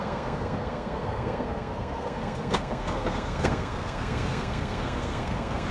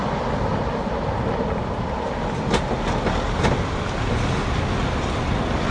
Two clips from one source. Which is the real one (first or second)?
second